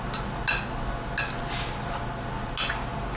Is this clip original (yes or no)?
yes